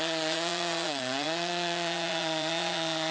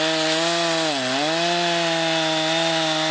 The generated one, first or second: first